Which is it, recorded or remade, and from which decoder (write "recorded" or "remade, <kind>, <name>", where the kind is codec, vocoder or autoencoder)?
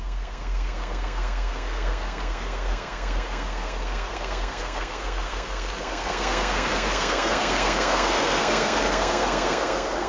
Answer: remade, codec, SNAC